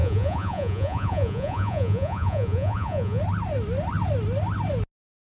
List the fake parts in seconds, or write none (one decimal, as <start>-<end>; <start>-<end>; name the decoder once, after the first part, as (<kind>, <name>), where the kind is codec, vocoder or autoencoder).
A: 0.0-3.2 (vocoder, Vocos)